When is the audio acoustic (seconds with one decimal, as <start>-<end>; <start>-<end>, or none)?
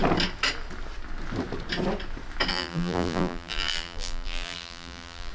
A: 0.0-2.5